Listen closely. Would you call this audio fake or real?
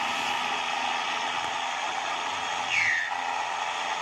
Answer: real